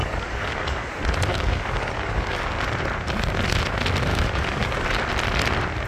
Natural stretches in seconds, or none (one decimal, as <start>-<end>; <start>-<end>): 0.9-1.3; 2.5-4.1; 5.0-5.9